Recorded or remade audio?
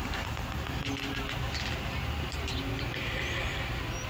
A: recorded